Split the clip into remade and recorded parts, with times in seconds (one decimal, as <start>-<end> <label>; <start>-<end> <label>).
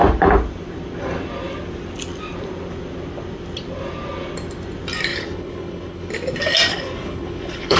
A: 0.0-5.1 recorded; 5.1-6.1 remade; 6.1-6.7 recorded; 6.7-7.8 remade